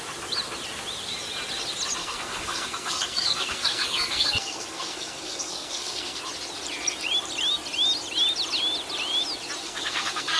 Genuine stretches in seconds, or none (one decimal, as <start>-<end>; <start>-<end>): 0.0-2.0; 6.2-9.6